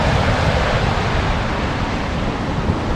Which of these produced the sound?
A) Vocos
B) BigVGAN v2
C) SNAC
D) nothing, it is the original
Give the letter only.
B